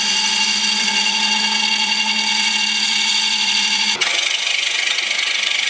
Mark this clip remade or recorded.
remade